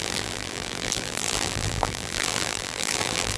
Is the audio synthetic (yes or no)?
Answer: yes